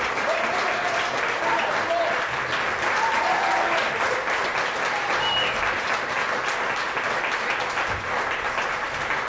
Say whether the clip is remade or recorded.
recorded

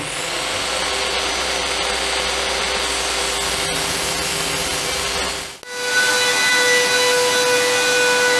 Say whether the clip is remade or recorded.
recorded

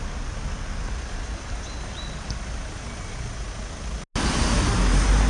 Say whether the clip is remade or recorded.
recorded